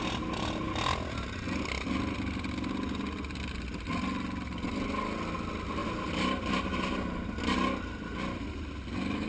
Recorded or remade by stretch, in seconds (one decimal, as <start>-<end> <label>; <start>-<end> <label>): 0.0-5.8 recorded; 5.8-7.4 remade; 7.4-9.3 recorded